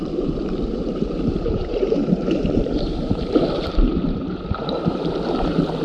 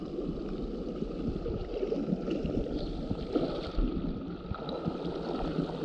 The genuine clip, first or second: second